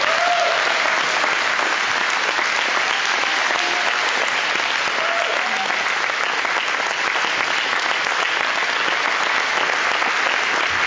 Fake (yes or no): no